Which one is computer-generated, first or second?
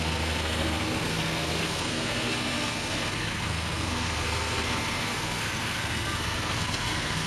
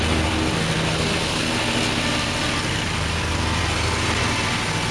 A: first